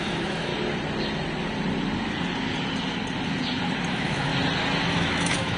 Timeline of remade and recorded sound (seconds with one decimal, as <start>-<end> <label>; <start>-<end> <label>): 0.0-0.5 remade; 0.5-3.9 recorded; 3.9-4.3 remade; 4.3-4.9 recorded; 4.9-5.6 remade